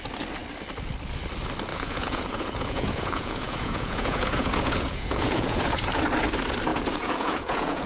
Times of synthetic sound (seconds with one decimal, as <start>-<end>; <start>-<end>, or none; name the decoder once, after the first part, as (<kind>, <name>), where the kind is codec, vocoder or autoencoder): 1.7-6.0 (vocoder, Vocos); 6.7-7.9